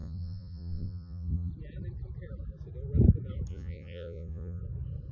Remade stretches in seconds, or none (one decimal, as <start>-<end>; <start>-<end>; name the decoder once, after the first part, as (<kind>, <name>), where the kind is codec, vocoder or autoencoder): 0.0-1.5 (vocoder, Vocos); 3.5-4.6